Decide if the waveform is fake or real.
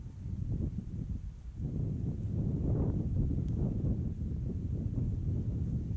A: real